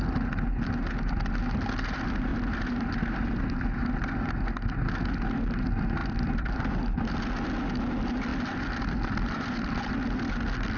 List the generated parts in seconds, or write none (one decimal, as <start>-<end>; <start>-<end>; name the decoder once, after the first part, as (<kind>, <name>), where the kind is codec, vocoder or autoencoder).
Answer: 2.3-4.3 (vocoder, BigVGAN v2); 6.0-7.3; 8.3-9.9